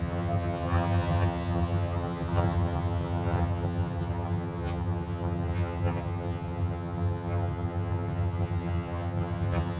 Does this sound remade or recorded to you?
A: remade